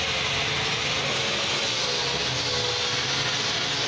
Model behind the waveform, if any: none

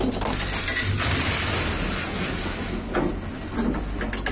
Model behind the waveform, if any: none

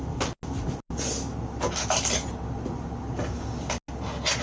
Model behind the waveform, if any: none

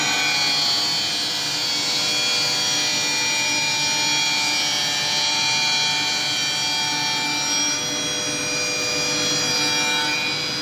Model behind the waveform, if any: none